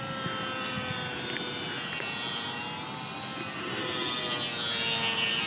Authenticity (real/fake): real